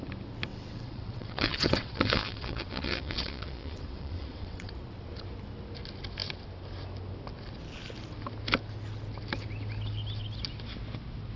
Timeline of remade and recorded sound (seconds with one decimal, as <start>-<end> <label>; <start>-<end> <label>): 0.0-0.5 recorded; 0.5-4.7 remade; 4.7-11.4 recorded